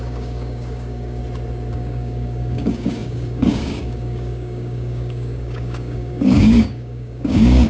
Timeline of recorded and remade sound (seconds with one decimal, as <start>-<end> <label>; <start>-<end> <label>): 0.0-1.2 remade; 1.2-1.7 recorded; 1.7-7.7 remade